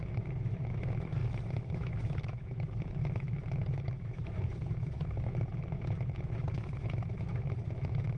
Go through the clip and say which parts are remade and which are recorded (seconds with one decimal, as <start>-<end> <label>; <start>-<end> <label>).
0.0-8.2 remade